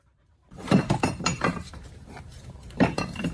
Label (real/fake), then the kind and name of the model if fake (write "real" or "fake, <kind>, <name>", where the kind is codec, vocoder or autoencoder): fake, vocoder, BigVGAN v2